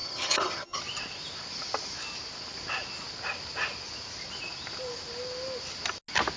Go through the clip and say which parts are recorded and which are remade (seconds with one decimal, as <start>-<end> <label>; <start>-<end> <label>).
0.0-0.8 remade; 0.8-6.4 recorded